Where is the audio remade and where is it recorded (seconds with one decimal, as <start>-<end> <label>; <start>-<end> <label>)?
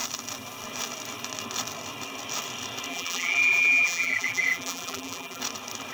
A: 0.0-2.9 recorded; 2.9-5.4 remade; 5.4-5.9 recorded